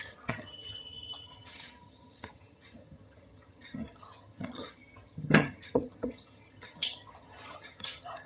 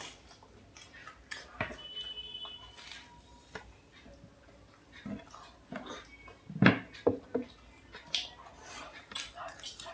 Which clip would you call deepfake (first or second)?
first